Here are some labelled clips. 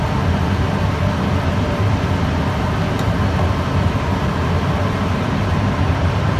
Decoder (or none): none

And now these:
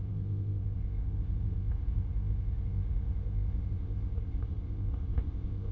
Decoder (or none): codec, ZipCodec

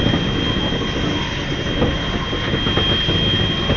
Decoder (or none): none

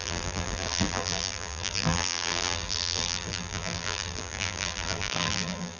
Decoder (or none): vocoder, BigVGAN v2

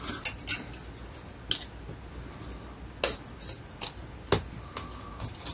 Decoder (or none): none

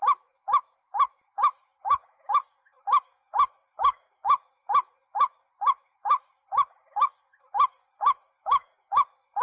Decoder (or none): autoencoder, DAC-VAE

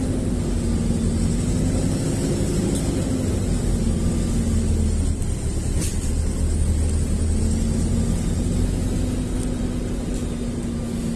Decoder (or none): none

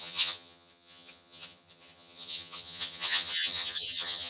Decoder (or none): vocoder, HiFi-GAN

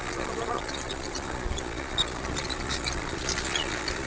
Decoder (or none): vocoder, Vocos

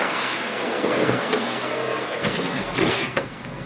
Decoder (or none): codec, SNAC